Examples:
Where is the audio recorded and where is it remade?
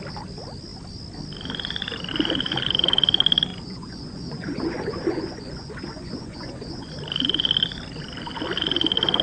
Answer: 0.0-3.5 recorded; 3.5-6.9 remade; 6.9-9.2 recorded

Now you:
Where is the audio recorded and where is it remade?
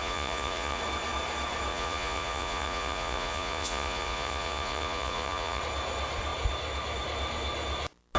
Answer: 0.0-0.8 remade; 0.8-1.7 recorded; 1.7-5.6 remade; 5.6-8.2 recorded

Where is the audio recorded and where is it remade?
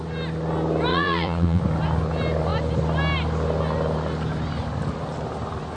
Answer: 0.0-0.9 recorded; 0.9-1.6 remade; 1.6-5.8 recorded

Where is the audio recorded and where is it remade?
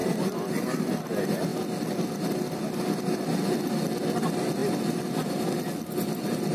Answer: 0.0-0.5 remade; 0.5-6.5 recorded